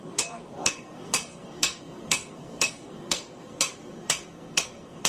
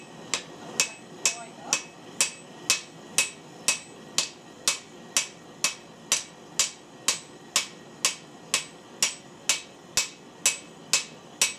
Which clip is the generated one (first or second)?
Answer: first